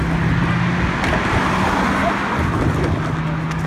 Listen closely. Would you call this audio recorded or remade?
recorded